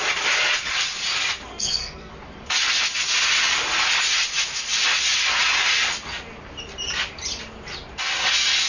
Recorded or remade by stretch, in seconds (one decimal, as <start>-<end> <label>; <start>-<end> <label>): 0.0-1.5 recorded; 1.5-2.1 remade; 2.1-8.7 recorded

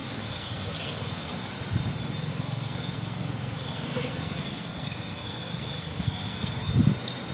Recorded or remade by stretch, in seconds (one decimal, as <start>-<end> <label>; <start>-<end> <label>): 0.0-1.5 remade; 1.5-2.3 recorded; 2.3-6.7 remade; 6.7-7.3 recorded